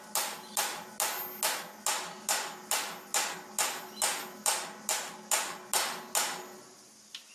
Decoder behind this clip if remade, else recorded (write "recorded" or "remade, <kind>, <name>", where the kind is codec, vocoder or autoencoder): recorded